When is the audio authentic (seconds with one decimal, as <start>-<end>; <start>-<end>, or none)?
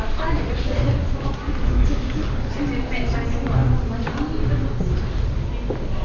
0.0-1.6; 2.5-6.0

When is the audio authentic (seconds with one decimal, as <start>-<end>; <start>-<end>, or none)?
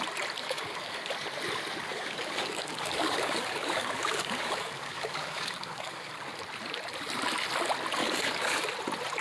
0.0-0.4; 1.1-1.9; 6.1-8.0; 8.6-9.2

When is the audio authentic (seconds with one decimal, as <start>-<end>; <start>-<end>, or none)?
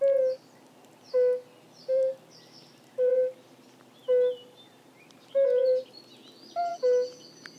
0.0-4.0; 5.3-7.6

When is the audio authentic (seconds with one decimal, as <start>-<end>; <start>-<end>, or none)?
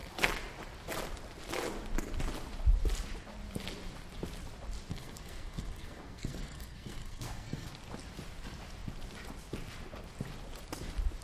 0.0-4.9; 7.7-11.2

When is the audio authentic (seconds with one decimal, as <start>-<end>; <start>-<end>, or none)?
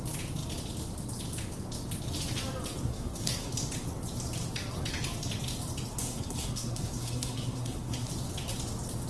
0.0-2.9; 3.5-5.9; 8.1-9.1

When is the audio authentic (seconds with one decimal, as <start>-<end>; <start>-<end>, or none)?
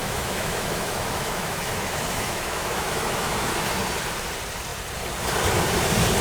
3.7-6.2